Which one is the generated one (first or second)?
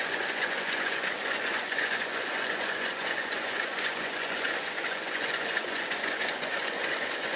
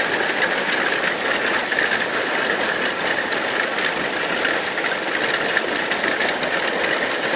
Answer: first